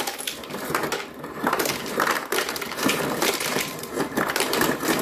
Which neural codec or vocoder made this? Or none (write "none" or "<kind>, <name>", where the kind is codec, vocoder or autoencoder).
vocoder, BigVGAN v2